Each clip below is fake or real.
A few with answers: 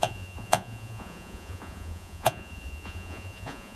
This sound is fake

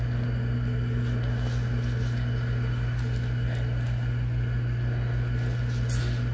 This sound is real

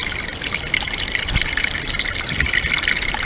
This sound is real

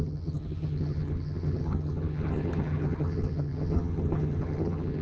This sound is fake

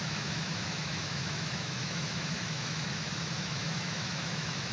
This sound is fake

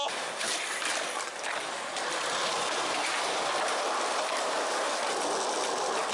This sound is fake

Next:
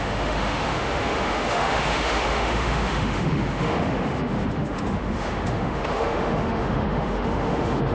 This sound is fake